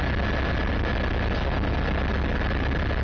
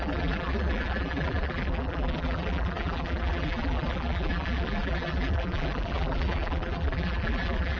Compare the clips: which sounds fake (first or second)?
second